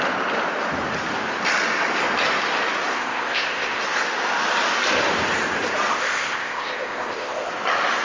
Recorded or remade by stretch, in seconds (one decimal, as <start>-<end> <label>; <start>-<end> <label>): 0.0-2.9 recorded; 2.9-3.8 remade; 3.8-5.9 recorded; 5.9-7.5 remade; 7.5-8.0 recorded